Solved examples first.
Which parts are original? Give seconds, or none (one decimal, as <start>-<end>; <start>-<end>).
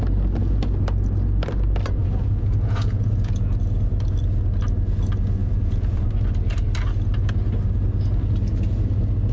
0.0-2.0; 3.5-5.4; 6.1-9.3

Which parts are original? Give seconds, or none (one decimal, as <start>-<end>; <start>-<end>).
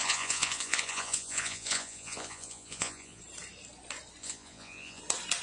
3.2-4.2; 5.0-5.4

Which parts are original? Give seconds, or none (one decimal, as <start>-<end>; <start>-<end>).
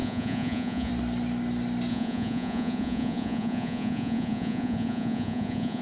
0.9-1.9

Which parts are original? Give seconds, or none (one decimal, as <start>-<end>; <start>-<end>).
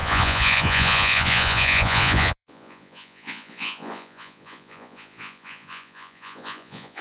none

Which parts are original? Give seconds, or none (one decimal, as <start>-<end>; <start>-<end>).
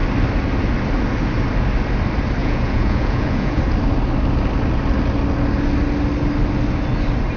0.0-2.4; 3.6-7.4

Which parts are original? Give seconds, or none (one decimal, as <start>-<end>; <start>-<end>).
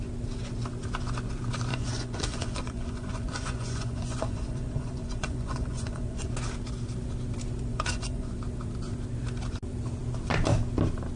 0.0-1.7; 6.3-7.7; 8.3-11.2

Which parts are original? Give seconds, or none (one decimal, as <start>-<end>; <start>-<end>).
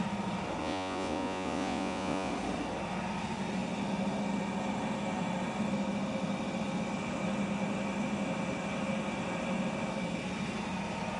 0.0-0.6; 2.3-11.2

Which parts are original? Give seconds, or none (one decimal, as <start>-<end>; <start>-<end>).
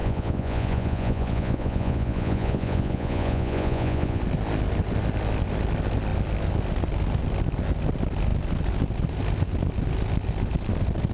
4.2-11.1